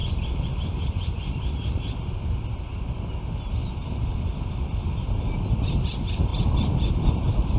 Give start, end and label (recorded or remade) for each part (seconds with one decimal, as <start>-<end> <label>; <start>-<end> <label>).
0.0-7.6 recorded